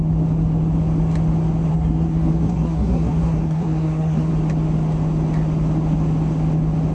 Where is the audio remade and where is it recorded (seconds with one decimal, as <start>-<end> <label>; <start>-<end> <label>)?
0.0-1.7 recorded; 1.7-4.3 remade; 4.3-6.9 recorded